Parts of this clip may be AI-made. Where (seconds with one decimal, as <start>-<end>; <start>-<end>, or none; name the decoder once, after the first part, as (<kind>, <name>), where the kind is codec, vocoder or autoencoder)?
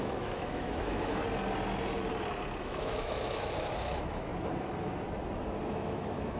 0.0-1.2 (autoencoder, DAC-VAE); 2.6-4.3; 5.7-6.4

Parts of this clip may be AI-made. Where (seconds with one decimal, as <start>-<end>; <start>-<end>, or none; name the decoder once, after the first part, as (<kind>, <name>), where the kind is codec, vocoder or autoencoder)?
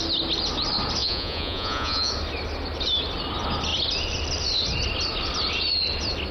1.0-2.1 (vocoder, Vocos)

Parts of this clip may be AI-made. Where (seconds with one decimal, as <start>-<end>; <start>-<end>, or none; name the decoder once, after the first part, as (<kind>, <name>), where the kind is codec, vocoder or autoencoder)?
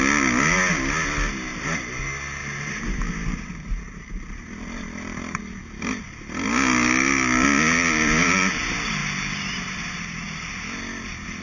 1.5-2.0 (vocoder, BigVGAN v2); 2.4-5.4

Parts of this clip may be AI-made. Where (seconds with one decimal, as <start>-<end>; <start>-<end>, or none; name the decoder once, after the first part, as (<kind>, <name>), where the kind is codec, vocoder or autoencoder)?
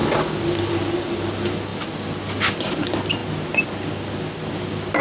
none